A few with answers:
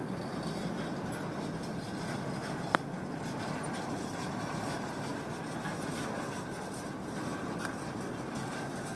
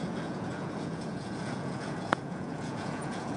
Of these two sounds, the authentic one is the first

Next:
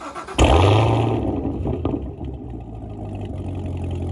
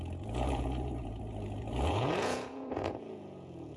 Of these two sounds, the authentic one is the first